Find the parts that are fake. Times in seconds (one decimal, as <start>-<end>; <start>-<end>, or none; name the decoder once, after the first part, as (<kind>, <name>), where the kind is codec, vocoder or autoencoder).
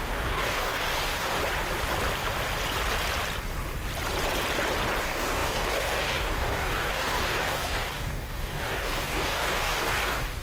0.0-1.4 (codec, DAC); 5.0-10.4